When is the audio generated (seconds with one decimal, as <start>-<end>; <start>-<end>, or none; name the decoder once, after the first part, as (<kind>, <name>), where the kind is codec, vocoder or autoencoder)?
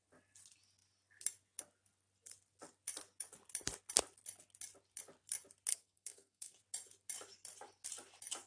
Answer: 5.7-6.6 (codec, SNAC)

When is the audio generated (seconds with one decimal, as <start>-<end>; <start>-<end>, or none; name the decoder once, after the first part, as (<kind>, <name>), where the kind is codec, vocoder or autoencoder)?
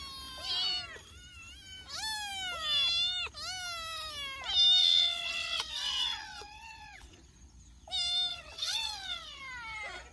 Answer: 4.8-7.2 (vocoder, WaveNeXt); 8.3-9.4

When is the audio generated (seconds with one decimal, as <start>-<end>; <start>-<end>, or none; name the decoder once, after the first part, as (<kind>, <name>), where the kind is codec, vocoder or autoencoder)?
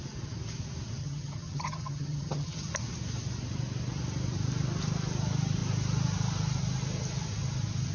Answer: 1.0-2.7 (vocoder, HiFi-GAN)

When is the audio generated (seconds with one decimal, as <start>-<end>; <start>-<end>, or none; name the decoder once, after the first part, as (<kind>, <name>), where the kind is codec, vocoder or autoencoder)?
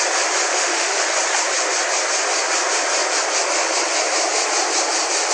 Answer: 0.5-1.0 (autoencoder, DAC-VAE)